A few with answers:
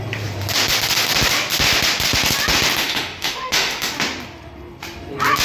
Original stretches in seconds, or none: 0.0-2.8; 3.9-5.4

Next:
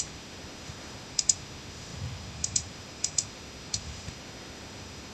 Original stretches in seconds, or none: none

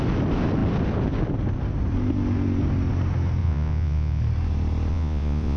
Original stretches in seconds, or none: 0.0-3.4; 4.2-4.9

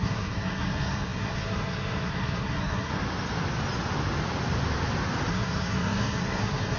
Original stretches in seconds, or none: 2.9-5.3